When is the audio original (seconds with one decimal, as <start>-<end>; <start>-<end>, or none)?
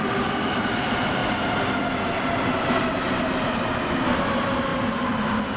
1.2-3.8; 4.7-5.6